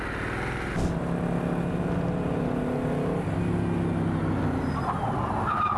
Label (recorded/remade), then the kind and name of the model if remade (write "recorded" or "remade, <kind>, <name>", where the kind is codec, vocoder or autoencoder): recorded